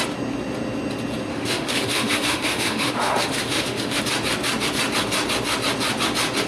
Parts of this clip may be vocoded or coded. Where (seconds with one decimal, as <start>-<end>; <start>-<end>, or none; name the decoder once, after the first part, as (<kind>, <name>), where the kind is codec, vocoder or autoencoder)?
1.3-4.0 (autoencoder, DAC-VAE)